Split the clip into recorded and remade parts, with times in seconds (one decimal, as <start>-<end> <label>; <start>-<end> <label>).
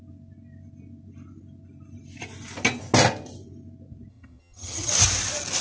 0.0-4.1 recorded; 4.1-4.9 remade; 4.9-5.6 recorded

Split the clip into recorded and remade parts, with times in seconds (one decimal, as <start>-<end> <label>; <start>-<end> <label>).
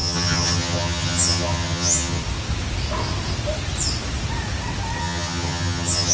0.0-2.2 remade; 2.2-5.0 recorded; 5.0-6.1 remade